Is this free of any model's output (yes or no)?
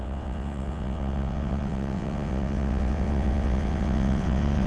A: no